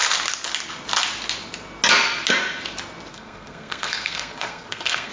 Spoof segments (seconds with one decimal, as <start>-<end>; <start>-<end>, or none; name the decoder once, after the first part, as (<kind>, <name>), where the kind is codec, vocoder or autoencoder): 3.1-5.1 (codec, SNAC)